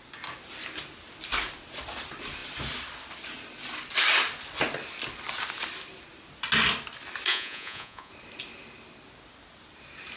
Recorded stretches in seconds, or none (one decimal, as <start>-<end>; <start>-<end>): 0.0-7.3; 8.1-10.2